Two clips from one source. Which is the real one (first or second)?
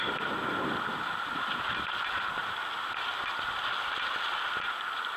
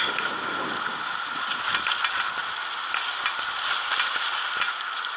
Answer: second